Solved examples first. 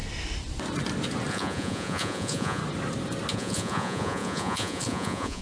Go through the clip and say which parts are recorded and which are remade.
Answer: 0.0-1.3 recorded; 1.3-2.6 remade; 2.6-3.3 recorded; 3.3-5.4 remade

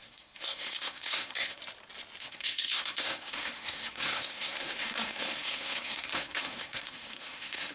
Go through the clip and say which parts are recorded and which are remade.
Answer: 0.0-1.6 remade; 1.6-2.2 recorded; 2.2-7.7 remade